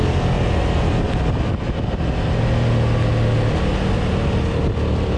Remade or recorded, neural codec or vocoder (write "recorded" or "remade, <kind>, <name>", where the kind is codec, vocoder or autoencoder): recorded